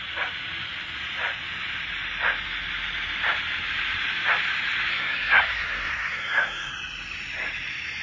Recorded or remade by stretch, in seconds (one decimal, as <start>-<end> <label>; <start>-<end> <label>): 0.0-4.9 recorded; 4.9-6.7 remade; 6.7-8.0 recorded